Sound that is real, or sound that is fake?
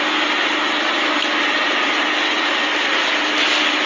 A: real